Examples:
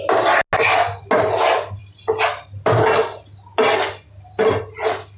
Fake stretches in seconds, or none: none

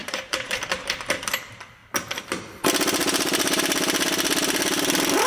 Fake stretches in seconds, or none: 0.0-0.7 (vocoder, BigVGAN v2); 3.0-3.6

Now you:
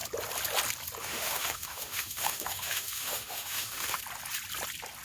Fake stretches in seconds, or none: 1.0-4.0 (autoencoder, DAC-VAE)

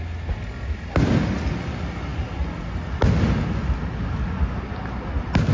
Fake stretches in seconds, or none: none

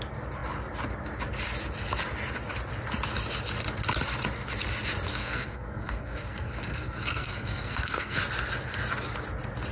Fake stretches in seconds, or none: 5.1-8.2 (codec, SNAC)

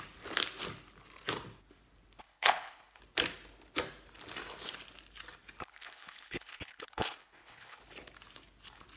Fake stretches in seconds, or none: 2.2-3.0 (codec, HILCodec); 5.6-7.8